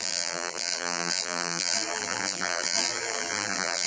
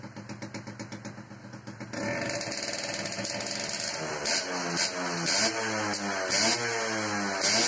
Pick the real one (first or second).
second